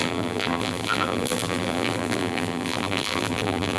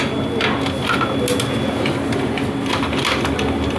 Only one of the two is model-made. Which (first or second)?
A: first